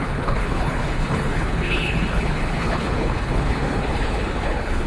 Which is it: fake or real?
fake